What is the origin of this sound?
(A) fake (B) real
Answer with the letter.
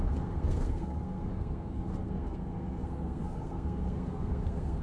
A